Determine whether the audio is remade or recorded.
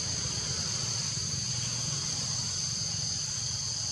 remade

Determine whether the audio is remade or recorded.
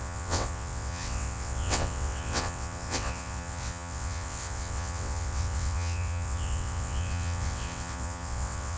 remade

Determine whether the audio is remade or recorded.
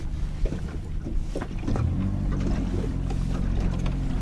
recorded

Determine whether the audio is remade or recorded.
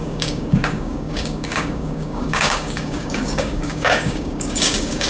remade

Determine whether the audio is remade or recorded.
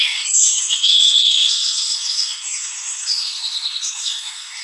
remade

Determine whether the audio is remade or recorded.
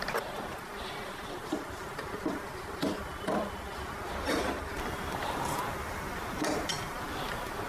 remade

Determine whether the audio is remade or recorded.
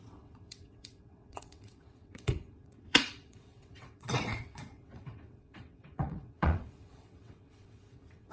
remade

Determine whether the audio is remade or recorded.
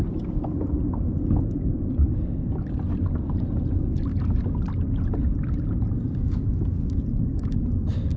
recorded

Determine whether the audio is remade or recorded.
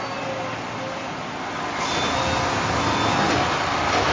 recorded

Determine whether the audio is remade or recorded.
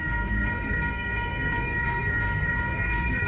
remade